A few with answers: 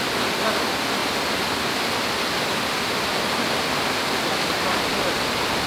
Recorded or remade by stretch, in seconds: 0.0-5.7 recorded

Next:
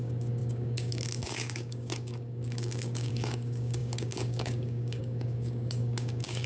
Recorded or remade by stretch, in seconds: 0.0-6.5 remade